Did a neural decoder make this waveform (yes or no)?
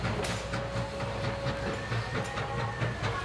no